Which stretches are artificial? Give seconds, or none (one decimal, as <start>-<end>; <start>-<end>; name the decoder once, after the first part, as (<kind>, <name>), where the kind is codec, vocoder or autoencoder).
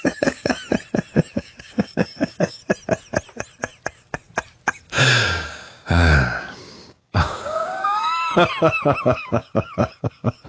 0.0-0.6 (codec, DAC); 1.3-2.6; 5.0-8.3; 9.0-10.5